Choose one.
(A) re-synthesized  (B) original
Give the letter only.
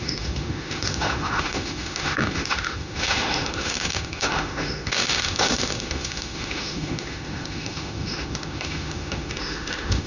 A